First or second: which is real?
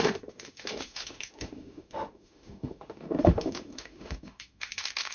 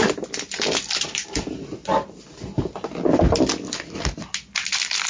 second